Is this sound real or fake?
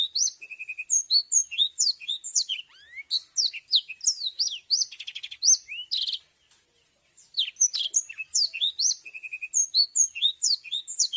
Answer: real